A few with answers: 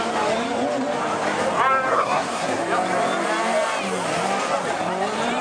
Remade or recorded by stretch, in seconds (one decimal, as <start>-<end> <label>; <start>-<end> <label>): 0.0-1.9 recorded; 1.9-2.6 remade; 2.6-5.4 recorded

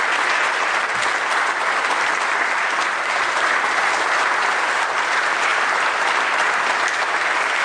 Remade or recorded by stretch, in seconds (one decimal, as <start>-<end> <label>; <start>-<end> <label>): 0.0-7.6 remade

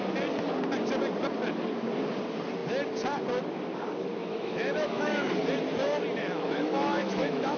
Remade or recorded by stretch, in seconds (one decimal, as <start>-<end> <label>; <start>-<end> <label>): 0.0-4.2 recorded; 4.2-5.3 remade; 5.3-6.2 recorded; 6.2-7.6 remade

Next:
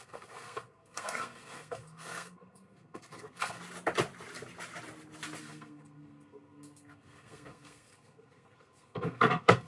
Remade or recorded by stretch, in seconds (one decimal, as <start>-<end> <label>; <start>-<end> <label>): 0.0-3.6 remade; 3.6-5.4 recorded; 5.4-9.7 remade

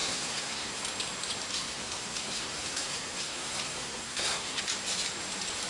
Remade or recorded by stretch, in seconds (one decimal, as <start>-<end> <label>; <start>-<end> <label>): 0.0-0.8 remade; 0.8-1.5 recorded; 1.5-4.6 remade; 4.6-5.7 recorded